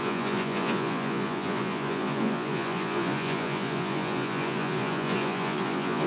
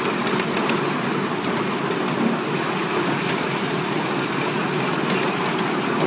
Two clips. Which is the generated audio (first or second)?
first